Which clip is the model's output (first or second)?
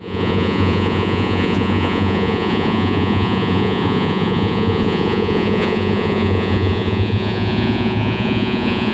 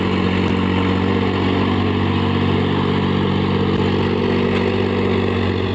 first